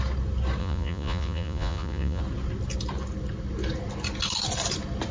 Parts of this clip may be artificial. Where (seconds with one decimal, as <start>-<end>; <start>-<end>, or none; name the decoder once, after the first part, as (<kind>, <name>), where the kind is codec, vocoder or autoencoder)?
0.6-2.2 (vocoder, Vocos)